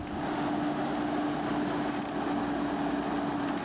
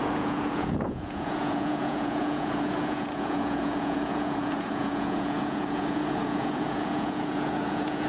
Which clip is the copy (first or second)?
second